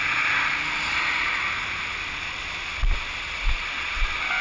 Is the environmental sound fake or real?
real